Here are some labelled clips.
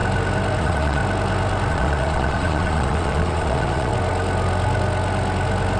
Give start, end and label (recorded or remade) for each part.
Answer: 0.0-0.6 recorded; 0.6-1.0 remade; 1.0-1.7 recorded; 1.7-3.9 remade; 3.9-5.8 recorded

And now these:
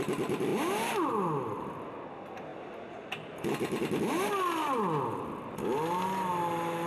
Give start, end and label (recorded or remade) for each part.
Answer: 0.0-6.9 recorded

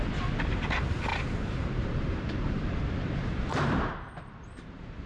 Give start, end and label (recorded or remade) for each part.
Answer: 0.0-5.1 remade

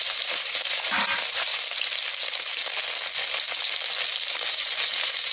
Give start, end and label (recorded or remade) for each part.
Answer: 0.0-1.5 remade; 1.5-4.3 recorded; 4.3-5.3 remade

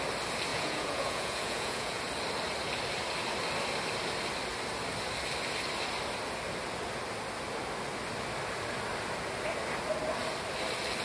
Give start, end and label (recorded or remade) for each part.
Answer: 0.0-0.5 recorded; 0.5-2.0 remade; 2.0-11.0 recorded

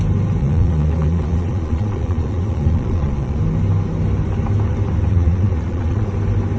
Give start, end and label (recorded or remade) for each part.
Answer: 0.0-0.4 recorded; 0.4-3.4 remade; 3.4-5.1 recorded; 5.1-6.1 remade; 6.1-6.6 recorded